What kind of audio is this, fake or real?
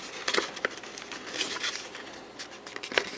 real